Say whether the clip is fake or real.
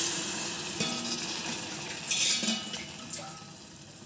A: real